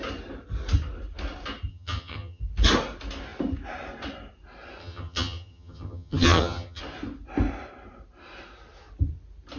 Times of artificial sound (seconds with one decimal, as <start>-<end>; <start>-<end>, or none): 1.7-2.4; 4.8-6.8